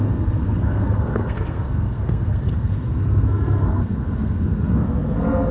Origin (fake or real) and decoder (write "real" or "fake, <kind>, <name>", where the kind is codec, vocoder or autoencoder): fake, codec, SNAC